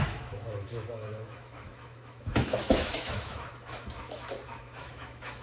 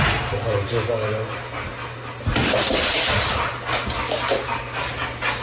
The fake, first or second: first